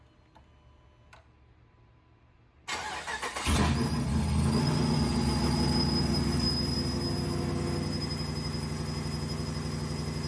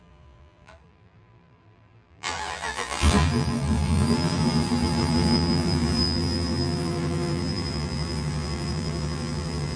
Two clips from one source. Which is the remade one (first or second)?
second